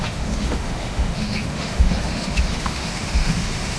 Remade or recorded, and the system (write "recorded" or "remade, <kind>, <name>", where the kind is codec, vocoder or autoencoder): remade, autoencoder, DAC-VAE